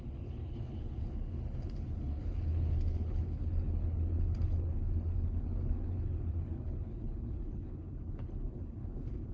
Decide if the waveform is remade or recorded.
remade